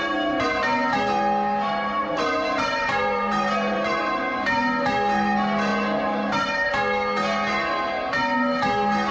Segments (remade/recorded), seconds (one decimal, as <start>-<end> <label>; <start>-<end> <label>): 0.0-2.0 recorded; 2.0-4.0 remade; 4.0-5.7 recorded; 5.7-6.7 remade; 6.7-9.1 recorded